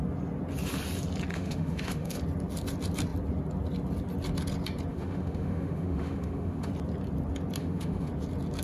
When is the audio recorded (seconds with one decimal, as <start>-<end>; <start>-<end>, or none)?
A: 0.0-1.3; 2.2-4.9; 6.7-7.6; 8.1-8.6